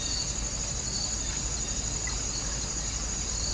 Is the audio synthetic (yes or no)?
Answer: no